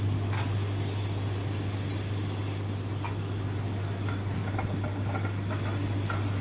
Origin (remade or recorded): recorded